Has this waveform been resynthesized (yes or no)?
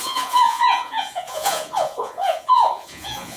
yes